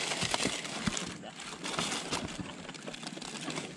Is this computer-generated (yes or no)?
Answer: no